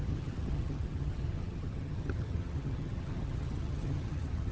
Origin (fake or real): fake